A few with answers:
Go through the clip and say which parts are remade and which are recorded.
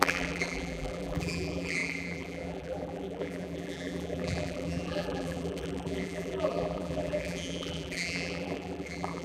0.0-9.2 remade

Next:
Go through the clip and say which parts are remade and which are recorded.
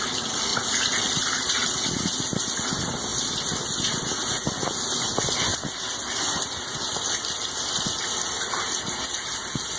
0.0-5.5 recorded; 5.5-8.1 remade; 8.1-9.8 recorded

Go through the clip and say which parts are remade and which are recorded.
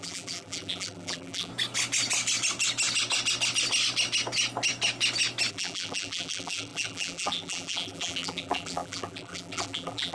0.0-1.5 remade; 1.5-5.5 recorded; 5.5-10.1 remade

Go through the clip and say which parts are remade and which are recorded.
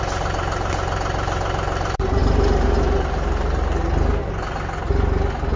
0.0-2.2 remade; 2.2-5.6 recorded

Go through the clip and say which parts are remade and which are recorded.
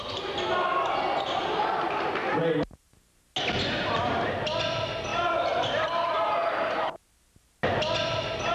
0.0-5.1 recorded; 5.1-5.8 remade; 5.8-8.5 recorded